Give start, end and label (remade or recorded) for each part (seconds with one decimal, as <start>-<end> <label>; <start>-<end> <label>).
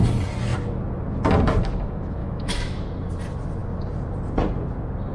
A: 0.0-2.2 recorded; 2.2-2.8 remade; 2.8-5.1 recorded